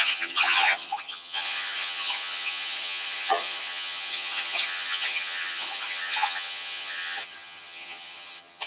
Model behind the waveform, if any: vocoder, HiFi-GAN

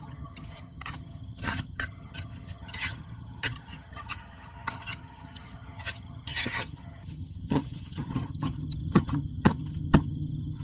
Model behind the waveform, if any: vocoder, HiFi-GAN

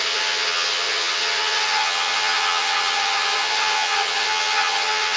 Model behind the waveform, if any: vocoder, HiFi-GAN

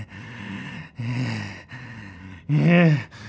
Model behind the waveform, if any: none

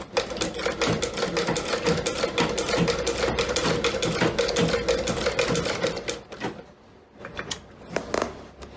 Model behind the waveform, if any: none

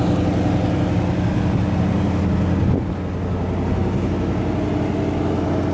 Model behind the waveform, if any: none